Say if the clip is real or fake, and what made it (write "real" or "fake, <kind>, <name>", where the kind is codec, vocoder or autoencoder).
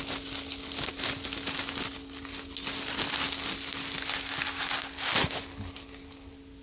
real